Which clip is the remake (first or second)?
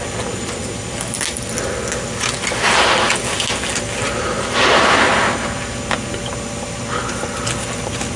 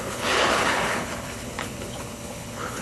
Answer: second